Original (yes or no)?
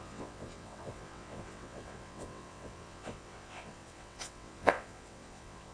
no